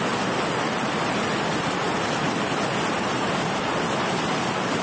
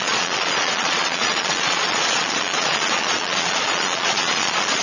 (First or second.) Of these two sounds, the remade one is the second